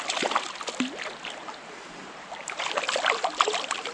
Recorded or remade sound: recorded